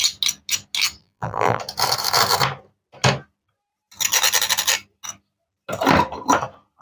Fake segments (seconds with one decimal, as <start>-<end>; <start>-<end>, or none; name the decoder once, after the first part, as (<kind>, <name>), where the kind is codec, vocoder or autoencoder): 1.0-1.6 (vocoder, BigVGAN v2)